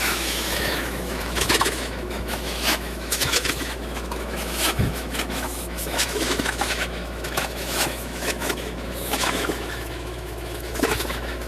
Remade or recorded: remade